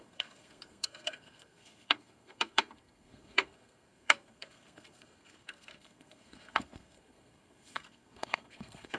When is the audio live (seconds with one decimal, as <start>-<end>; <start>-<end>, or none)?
none